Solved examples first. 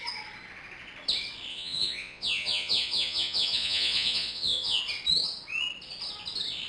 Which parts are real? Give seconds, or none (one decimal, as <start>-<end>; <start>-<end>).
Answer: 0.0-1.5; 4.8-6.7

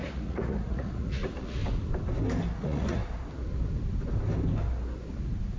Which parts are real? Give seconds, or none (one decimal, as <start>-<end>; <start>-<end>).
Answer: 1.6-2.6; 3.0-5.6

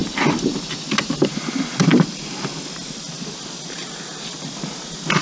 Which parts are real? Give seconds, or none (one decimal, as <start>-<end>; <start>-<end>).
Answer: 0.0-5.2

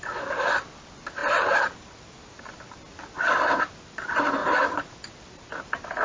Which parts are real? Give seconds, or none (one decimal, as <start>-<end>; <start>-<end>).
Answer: 0.0-6.0

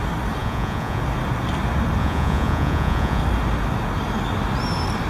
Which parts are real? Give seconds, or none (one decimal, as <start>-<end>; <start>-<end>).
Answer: 0.0-0.4; 1.0-2.0; 3.2-5.1

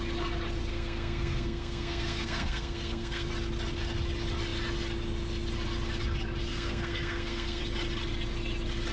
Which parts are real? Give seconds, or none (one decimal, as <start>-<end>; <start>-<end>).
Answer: 0.0-0.7; 3.3-6.5; 7.6-8.9

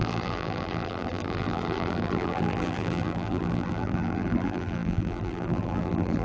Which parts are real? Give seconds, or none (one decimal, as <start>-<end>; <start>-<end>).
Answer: none

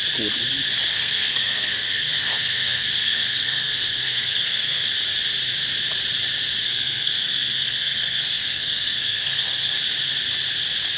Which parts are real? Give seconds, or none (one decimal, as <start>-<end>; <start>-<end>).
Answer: 0.0-0.9; 4.9-6.6; 9.7-11.0